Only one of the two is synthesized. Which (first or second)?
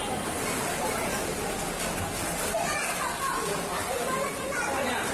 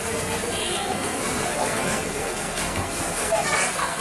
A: second